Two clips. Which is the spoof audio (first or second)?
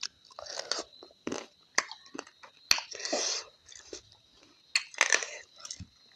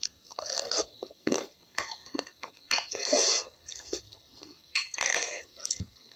second